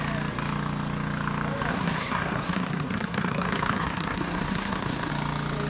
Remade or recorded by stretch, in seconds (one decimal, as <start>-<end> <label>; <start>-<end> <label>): 0.0-1.7 recorded; 1.7-5.1 remade; 5.1-5.7 recorded